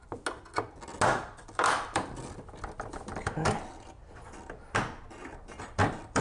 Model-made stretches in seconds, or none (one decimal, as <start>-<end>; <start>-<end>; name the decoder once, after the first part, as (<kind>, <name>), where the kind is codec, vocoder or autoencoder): 1.2-4.0 (vocoder, BigVGAN v2); 5.6-6.2